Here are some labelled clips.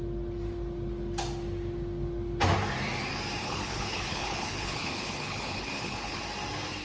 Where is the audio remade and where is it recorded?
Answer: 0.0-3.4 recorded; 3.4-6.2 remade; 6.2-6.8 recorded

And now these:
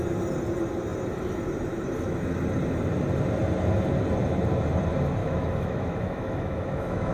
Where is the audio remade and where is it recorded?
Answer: 0.0-5.2 recorded; 5.2-7.1 remade

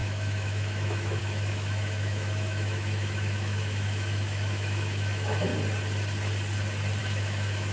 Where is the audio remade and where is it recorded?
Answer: 0.0-5.5 remade; 5.5-7.0 recorded; 7.0-7.7 remade

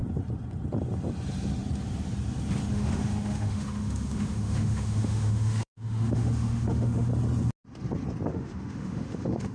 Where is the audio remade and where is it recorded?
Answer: 0.0-2.7 recorded; 2.7-7.1 remade; 7.1-8.3 recorded; 8.3-9.5 remade

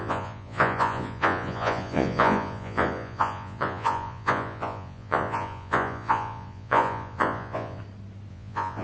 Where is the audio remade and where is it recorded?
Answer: 0.0-7.8 remade; 7.8-8.3 recorded; 8.3-8.8 remade

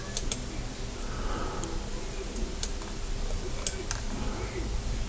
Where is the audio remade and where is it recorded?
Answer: 0.0-5.1 recorded